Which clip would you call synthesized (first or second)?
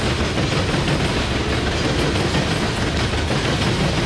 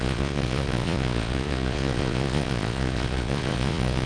second